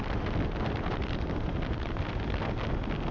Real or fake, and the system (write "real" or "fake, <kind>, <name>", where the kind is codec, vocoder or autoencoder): real